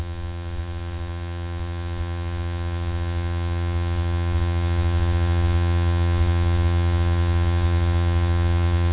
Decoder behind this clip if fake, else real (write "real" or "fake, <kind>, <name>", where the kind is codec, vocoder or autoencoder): fake, vocoder, Vocos